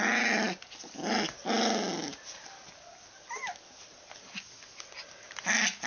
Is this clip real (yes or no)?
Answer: yes